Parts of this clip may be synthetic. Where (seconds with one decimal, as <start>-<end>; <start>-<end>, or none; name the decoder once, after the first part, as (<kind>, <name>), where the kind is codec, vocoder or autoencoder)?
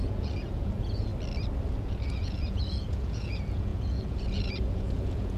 0.0-1.1 (vocoder, Vocos); 1.7-5.4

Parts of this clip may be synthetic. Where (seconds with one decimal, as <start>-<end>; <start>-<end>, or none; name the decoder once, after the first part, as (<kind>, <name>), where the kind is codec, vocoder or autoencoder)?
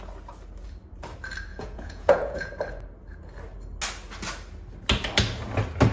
1.5-2.5 (vocoder, Vocos)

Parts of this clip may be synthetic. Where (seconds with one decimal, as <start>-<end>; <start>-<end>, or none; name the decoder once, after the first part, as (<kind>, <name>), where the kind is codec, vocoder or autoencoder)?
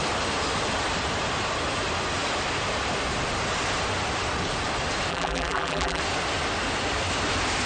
5.1-6.0 (vocoder, BigVGAN v2)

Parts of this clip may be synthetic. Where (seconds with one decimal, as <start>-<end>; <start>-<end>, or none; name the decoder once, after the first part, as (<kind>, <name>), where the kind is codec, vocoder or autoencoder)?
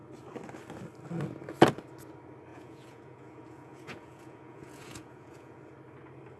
2.5-5.6 (vocoder, Vocos)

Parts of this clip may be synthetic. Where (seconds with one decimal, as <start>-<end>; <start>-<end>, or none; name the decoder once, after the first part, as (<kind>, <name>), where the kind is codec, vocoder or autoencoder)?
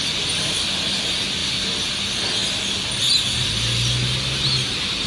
none